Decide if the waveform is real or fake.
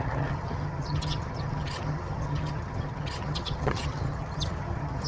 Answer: fake